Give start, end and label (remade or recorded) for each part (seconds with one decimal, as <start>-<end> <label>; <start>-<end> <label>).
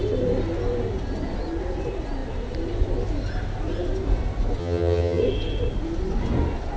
0.0-4.6 recorded; 4.6-5.2 remade; 5.2-6.8 recorded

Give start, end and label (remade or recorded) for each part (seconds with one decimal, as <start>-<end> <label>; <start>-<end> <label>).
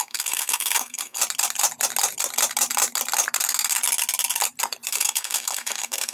0.0-1.2 remade; 1.2-4.9 recorded; 4.9-6.1 remade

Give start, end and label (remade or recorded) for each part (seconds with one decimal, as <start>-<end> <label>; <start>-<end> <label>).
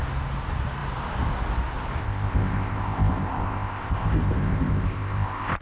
0.0-2.0 recorded; 2.0-5.6 remade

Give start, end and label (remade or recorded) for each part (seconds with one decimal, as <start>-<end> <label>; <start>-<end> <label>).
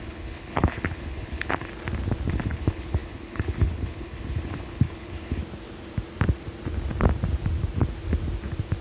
0.0-1.7 remade; 1.7-2.3 recorded; 2.3-5.4 remade; 5.4-8.8 recorded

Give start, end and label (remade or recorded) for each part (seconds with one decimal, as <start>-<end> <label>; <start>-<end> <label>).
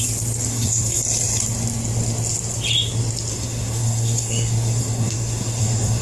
0.0-0.5 recorded; 0.5-1.0 remade; 1.0-3.3 recorded; 3.3-6.0 remade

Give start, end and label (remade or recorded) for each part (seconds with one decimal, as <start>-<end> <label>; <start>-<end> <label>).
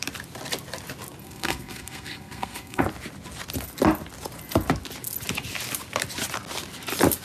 0.0-1.2 recorded; 1.2-2.8 remade; 2.8-7.2 recorded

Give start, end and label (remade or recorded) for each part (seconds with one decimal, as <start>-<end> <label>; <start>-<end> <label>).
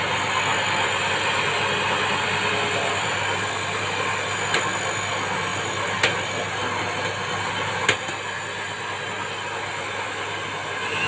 0.0-11.1 recorded